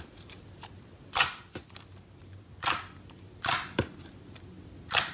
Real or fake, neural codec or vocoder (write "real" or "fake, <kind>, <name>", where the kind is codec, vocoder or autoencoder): real